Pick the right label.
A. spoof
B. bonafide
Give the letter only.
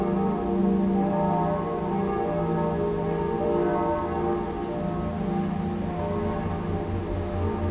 B